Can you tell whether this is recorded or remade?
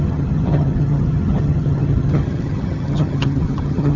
remade